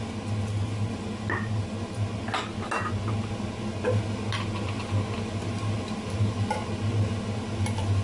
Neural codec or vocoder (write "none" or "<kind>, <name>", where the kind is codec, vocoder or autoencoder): none